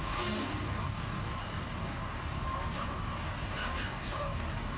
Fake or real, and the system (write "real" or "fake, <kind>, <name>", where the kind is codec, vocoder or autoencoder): fake, codec, DAC